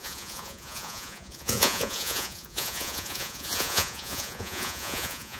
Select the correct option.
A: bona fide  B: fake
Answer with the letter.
B